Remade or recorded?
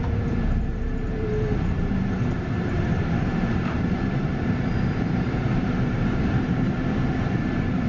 remade